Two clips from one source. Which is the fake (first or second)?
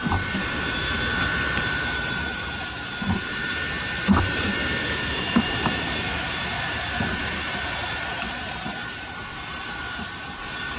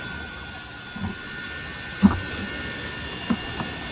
first